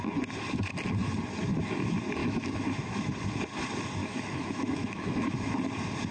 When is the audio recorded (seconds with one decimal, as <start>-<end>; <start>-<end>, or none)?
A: 0.0-2.2; 3.1-4.0; 5.6-6.1